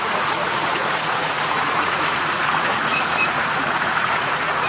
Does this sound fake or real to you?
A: fake